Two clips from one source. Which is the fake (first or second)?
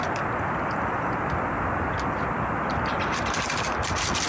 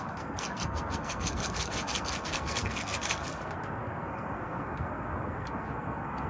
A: second